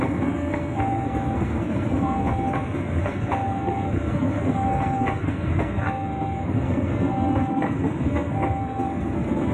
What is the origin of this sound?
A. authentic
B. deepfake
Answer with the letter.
B